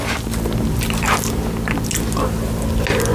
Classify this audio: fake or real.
real